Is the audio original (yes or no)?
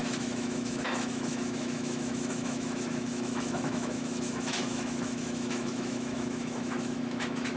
no